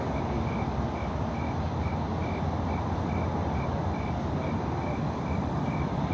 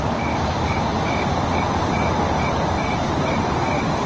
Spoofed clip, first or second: second